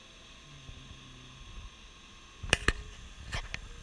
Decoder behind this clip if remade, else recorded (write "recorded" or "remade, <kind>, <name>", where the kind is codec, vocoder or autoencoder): recorded